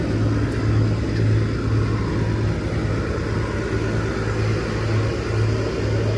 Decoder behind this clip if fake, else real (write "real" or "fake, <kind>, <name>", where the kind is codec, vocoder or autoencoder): real